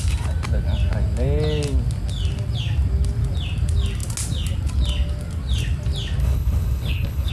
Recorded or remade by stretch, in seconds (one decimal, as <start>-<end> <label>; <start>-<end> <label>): 0.0-6.2 recorded; 6.2-7.3 remade